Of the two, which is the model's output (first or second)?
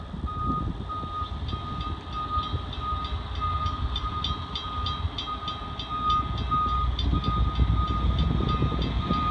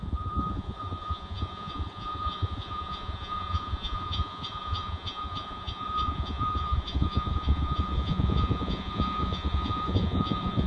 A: second